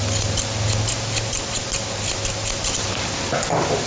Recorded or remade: recorded